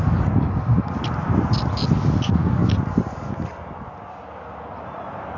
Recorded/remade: recorded